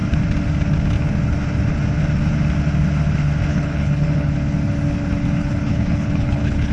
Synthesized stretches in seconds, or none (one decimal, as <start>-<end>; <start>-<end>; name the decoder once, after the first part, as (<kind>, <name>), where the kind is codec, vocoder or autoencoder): 3.5-4.3 (codec, HILCodec); 5.4-6.7